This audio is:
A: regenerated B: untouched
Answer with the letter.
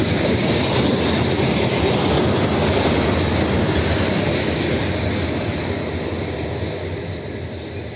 B